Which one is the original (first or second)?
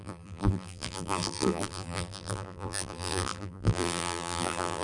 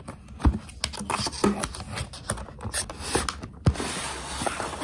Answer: second